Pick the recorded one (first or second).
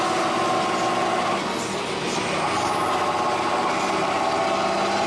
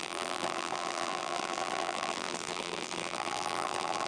first